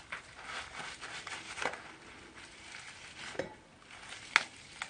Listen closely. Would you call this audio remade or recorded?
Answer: recorded